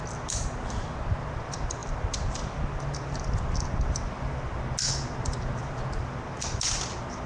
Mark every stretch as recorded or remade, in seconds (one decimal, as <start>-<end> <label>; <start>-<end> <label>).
0.0-7.3 recorded

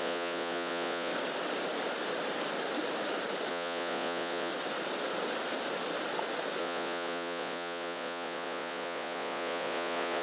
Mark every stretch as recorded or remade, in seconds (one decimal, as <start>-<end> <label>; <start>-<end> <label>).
0.0-1.1 remade; 1.1-3.5 recorded; 3.5-4.5 remade; 4.5-6.6 recorded; 6.6-10.2 remade